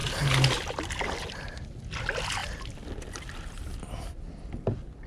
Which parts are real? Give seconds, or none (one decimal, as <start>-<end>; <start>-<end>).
0.0-5.1